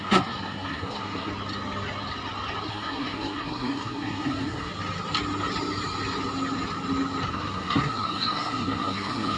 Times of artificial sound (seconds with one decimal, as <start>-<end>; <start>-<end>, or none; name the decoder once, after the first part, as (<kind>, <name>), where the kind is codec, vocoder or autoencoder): 0.0-1.3 (codec, SNAC); 2.7-4.7; 7.3-9.4